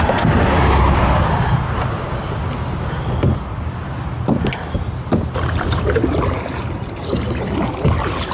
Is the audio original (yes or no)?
yes